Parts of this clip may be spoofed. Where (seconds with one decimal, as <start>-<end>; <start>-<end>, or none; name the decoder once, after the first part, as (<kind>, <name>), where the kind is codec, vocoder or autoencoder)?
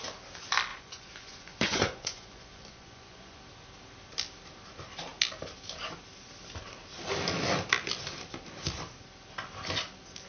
0.7-3.4 (vocoder, Vocos)